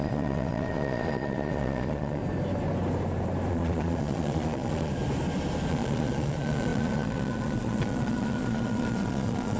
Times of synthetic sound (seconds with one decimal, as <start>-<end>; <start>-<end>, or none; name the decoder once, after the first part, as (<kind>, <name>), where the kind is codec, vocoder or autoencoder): 0.0-2.2 (vocoder, Vocos); 3.5-4.9; 5.7-9.6